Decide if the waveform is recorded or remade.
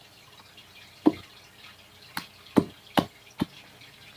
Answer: recorded